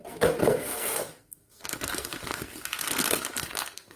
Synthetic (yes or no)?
yes